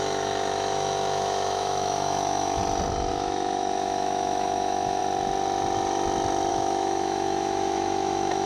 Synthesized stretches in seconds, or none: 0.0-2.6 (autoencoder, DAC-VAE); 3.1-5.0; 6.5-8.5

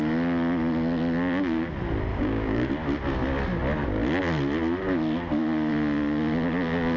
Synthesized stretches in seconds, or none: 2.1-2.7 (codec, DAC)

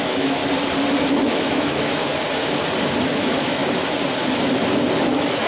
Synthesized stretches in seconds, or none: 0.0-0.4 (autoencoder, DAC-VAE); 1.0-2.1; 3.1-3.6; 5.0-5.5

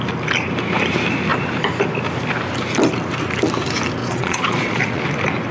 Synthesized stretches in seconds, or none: 4.0-5.0 (vocoder, Vocos)

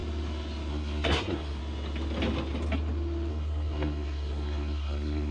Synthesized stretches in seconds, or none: 0.7-1.6 (codec, SNAC); 3.3-5.3